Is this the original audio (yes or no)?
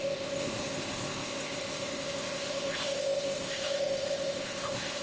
no